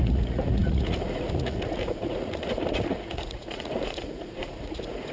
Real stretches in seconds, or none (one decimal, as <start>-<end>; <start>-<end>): none